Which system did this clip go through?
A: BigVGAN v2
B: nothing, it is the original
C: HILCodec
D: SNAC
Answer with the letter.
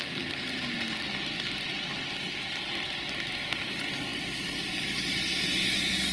B